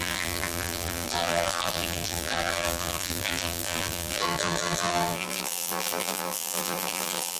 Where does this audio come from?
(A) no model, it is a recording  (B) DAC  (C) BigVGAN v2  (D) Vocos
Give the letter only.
C